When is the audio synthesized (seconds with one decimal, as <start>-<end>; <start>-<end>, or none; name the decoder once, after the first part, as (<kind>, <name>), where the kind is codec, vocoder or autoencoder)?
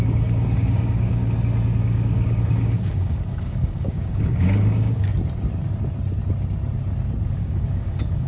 0.0-1.2 (codec, DAC); 1.8-5.1; 7.3-8.3